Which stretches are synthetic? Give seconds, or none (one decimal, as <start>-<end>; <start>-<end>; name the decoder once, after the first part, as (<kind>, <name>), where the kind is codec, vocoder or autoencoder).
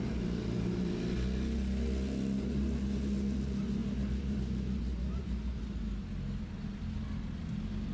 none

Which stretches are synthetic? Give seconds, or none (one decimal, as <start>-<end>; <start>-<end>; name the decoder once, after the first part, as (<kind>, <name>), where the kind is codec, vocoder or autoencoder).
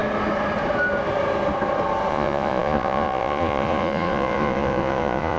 2.1-5.4 (vocoder, Vocos)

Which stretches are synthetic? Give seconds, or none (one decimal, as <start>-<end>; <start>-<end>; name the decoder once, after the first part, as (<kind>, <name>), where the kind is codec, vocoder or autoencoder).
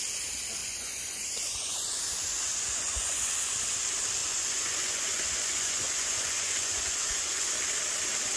0.6-3.3 (vocoder, Vocos); 4.2-7.5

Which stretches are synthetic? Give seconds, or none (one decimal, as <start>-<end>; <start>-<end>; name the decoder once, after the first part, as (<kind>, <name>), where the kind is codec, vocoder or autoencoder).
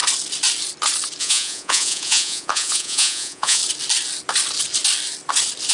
1.2-3.6 (vocoder, Vocos)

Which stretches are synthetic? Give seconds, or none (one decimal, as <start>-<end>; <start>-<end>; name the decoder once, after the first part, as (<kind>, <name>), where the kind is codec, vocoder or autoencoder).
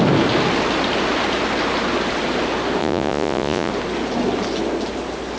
2.8-3.7 (vocoder, Vocos)